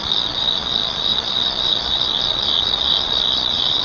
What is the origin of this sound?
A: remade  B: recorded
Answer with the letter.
A